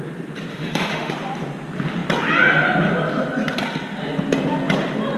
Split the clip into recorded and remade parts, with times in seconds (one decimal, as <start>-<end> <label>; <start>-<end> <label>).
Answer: 0.0-0.5 recorded; 0.5-1.1 remade; 1.1-5.2 recorded